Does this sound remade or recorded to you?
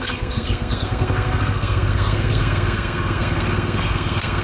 remade